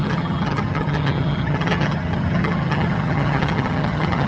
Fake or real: fake